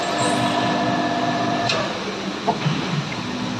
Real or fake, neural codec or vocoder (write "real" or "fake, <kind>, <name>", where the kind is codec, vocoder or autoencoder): real